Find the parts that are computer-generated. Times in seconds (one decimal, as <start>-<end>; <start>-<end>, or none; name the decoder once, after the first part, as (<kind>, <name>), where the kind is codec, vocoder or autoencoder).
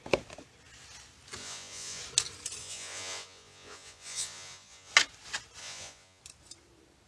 1.4-2.0 (vocoder, Vocos); 2.6-4.9; 5.6-6.2